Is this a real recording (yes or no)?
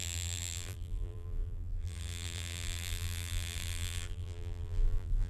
no